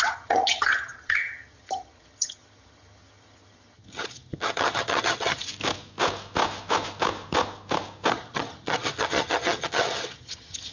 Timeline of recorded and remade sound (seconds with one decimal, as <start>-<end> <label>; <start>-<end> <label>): 0.0-5.5 remade; 5.5-8.1 recorded; 8.1-10.7 remade